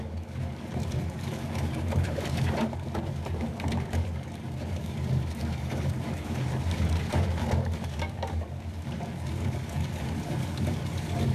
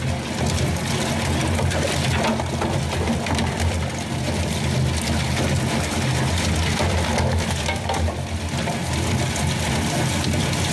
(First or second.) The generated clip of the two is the first